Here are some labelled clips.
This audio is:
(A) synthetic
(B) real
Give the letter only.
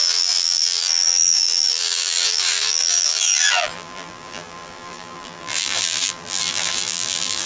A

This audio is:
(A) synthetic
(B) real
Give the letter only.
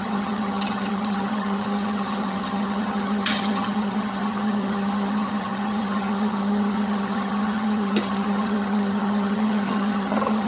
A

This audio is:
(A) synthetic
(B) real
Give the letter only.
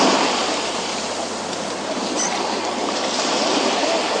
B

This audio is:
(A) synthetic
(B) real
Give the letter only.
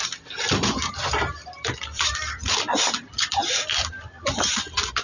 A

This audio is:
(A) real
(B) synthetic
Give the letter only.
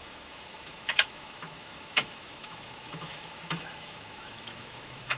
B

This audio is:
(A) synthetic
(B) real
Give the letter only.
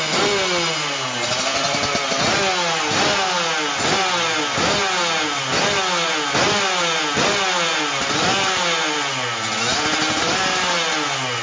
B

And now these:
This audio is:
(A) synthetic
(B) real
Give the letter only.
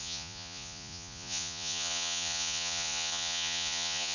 A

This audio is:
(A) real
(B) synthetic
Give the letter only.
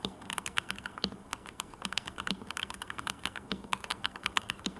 B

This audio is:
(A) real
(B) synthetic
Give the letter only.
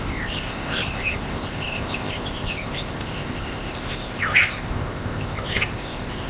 B